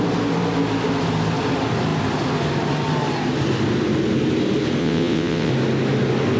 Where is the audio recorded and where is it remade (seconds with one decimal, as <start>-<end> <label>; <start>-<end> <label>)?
0.0-4.8 recorded; 4.8-5.5 remade; 5.5-6.4 recorded